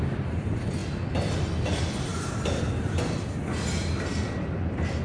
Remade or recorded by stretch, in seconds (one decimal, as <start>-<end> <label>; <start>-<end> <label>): 0.0-5.0 recorded